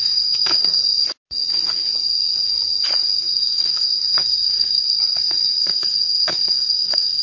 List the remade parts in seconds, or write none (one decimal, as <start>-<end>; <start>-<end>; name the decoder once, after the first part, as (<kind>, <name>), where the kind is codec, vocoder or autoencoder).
0.0-0.8 (codec, SNAC); 3.2-7.2